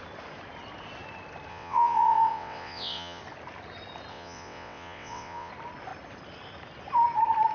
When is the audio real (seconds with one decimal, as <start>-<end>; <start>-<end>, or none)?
0.0-1.5; 3.2-4.1; 5.5-7.5